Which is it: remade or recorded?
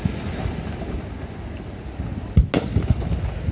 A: recorded